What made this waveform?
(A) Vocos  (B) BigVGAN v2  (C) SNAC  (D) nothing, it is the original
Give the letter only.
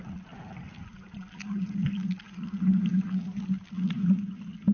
D